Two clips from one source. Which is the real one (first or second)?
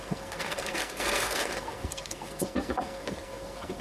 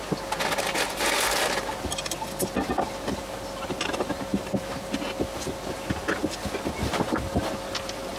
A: second